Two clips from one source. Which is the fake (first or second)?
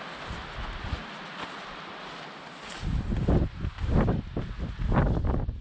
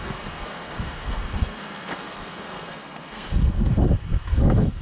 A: second